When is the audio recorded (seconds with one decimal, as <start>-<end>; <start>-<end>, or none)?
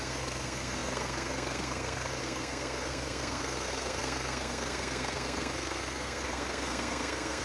none